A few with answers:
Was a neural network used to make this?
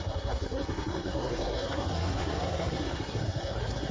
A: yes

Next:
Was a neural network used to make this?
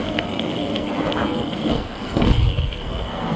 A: yes